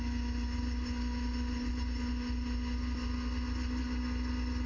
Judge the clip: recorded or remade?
recorded